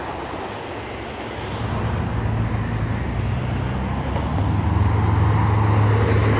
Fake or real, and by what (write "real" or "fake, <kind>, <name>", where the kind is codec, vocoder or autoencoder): real